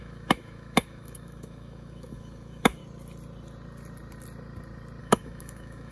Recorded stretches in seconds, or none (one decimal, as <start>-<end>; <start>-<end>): 2.8-5.0